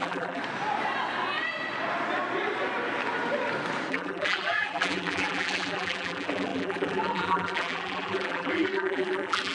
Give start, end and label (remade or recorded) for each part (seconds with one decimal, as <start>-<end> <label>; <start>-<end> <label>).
0.0-0.4 remade; 0.4-3.9 recorded; 3.9-9.5 remade